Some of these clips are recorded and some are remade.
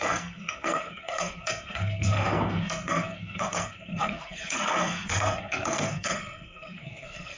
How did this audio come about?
remade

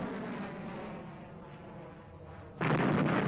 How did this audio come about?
recorded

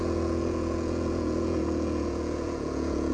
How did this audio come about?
remade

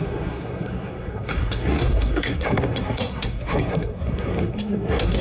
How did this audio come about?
remade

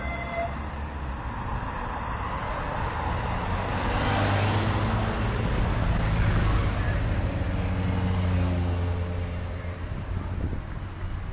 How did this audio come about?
recorded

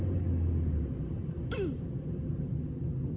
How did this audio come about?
recorded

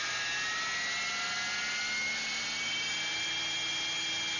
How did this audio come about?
recorded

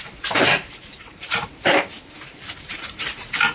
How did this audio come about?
remade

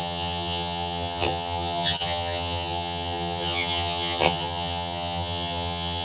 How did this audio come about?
remade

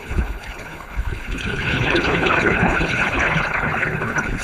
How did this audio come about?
remade